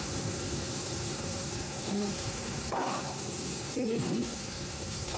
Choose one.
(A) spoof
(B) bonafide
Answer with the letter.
A